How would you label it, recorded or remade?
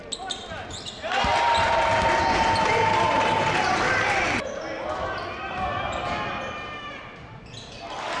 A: recorded